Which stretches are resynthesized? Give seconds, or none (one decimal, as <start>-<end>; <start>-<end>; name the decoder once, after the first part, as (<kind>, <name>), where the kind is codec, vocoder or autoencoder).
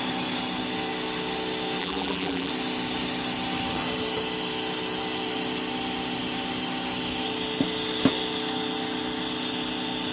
1.8-2.5 (vocoder, BigVGAN v2)